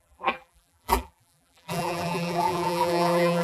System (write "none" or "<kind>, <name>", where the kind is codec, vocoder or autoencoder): vocoder, BigVGAN v2